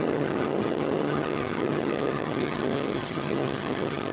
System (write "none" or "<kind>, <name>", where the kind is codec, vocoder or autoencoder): vocoder, HiFi-GAN